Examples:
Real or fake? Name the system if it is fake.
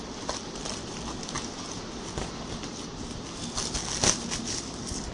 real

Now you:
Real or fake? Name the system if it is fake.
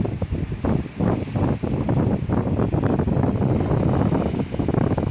real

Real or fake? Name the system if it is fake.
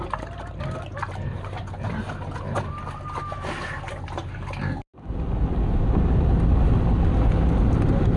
real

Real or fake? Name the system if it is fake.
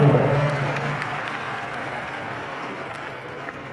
fake, codec, SNAC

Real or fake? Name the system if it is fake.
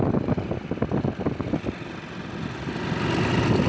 real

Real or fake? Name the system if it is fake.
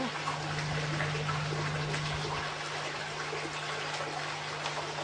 real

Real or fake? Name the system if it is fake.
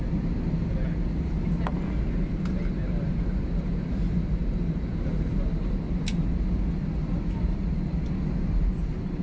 real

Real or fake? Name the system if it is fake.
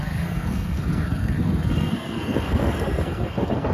fake, codec, SNAC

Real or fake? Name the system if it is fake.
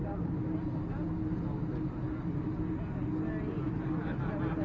real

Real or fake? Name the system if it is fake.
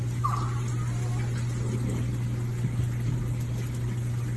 real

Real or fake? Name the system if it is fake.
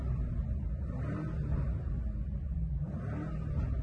real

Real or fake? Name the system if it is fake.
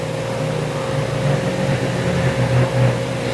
real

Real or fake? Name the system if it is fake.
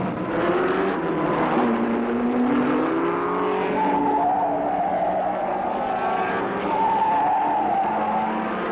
real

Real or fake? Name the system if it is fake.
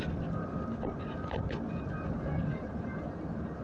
real